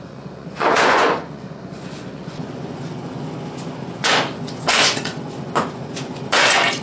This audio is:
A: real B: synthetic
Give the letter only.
B